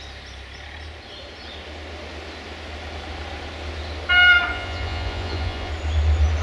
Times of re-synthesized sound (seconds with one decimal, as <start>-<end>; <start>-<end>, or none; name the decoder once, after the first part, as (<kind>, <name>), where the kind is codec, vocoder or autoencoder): 4.5-5.7 (vocoder, Vocos)